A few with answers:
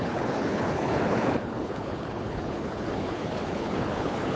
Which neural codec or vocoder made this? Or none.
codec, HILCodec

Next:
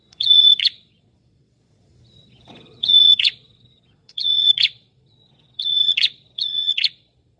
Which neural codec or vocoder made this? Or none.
vocoder, Vocos